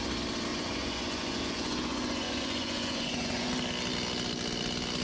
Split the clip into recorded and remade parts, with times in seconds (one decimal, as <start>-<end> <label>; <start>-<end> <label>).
0.0-0.5 recorded; 0.5-3.5 remade; 3.5-5.0 recorded

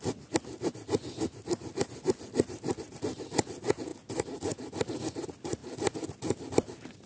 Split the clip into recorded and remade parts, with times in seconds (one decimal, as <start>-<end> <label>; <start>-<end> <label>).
0.0-7.1 recorded

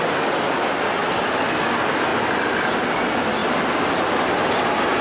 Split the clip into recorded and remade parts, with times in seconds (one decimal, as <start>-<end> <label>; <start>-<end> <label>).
0.0-5.0 recorded

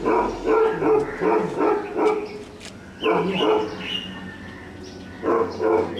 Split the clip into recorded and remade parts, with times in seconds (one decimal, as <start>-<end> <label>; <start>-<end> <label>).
0.0-5.3 recorded; 5.3-6.0 remade

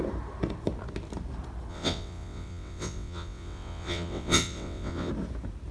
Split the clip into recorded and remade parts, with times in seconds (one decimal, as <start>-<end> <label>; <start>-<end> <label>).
0.0-1.7 recorded; 1.7-5.1 remade; 5.1-5.7 recorded